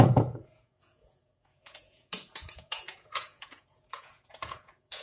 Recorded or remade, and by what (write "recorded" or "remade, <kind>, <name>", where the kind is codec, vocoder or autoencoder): remade, vocoder, Vocos